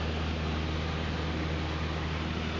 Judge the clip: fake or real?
real